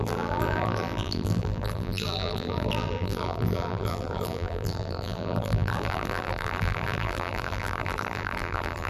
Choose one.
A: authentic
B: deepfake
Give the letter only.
B